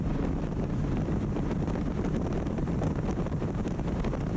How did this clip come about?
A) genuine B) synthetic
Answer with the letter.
B